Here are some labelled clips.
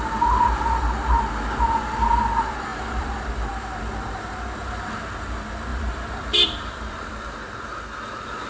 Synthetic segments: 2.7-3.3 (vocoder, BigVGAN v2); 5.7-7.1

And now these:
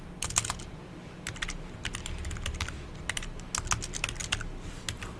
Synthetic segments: none

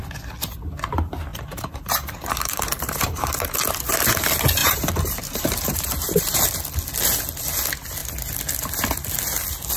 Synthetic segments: 1.3-3.5 (vocoder, BigVGAN v2); 4.6-6.4